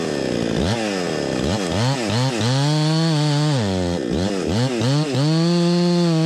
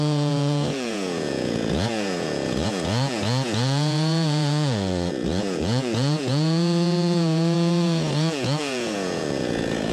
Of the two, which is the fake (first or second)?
second